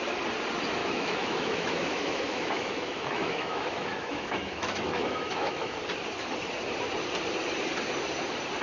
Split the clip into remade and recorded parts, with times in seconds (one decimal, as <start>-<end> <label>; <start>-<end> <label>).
0.0-0.8 recorded; 0.8-5.7 remade; 5.7-8.6 recorded